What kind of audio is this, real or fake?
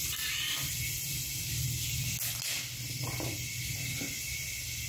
real